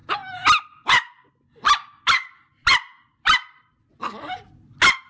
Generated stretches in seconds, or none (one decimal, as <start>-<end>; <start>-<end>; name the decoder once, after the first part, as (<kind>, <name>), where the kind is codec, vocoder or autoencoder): none